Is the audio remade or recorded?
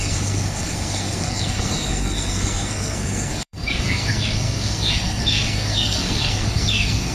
remade